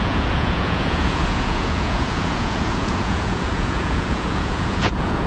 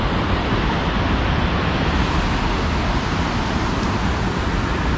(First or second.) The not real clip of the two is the first